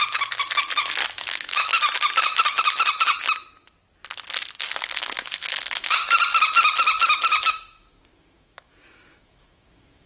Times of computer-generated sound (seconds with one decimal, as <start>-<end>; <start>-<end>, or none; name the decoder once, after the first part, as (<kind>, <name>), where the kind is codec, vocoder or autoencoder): 0.8-1.7 (autoencoder, DAC-VAE); 4.8-6.0; 7.4-10.1